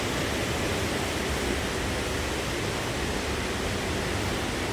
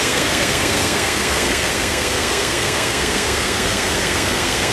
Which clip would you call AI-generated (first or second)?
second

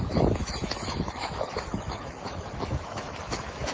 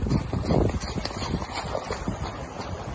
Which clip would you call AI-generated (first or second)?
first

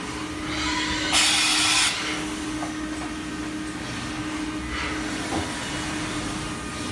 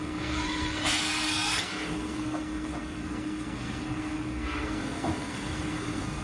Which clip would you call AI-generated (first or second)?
second